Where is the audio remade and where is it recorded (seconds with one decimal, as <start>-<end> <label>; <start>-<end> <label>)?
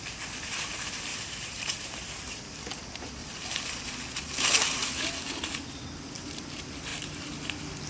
0.0-1.1 recorded; 1.1-2.4 remade; 2.4-3.2 recorded; 3.2-3.8 remade; 3.8-7.9 recorded